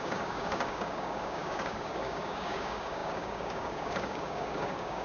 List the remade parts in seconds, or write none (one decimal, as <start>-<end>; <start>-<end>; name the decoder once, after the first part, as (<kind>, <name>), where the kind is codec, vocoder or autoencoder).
0.0-5.0 (codec, DAC)